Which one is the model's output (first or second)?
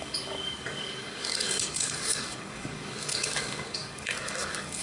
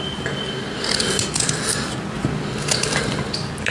first